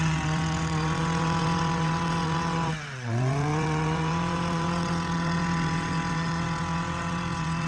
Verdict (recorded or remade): remade